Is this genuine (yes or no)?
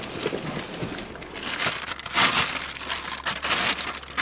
yes